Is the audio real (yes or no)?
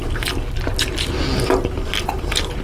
yes